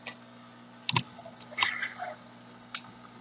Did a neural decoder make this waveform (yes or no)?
no